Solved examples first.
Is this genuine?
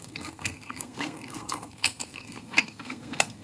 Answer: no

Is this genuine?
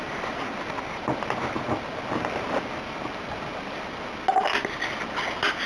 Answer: yes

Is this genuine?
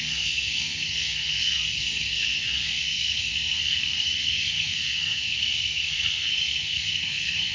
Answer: no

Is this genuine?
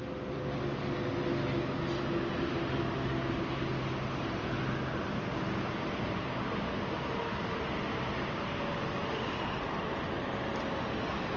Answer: yes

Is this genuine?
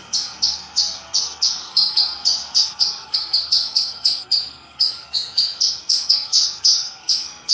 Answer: no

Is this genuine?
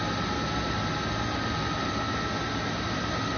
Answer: yes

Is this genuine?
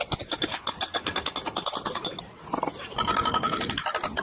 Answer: yes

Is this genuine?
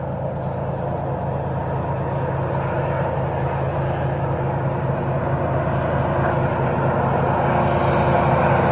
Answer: yes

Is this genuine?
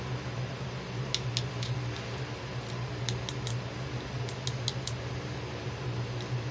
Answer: yes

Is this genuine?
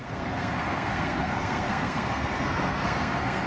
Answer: no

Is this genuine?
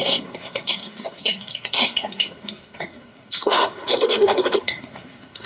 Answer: no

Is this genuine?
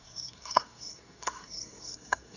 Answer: no